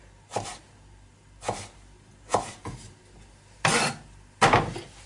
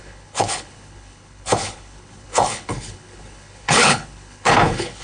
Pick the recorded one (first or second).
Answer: first